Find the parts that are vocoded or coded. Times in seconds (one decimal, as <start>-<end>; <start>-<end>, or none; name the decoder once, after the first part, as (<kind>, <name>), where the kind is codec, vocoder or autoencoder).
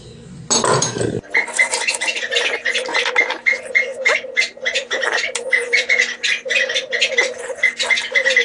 none